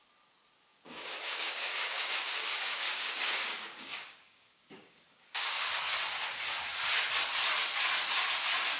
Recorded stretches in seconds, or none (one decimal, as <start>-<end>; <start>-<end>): 0.0-0.7; 5.7-8.8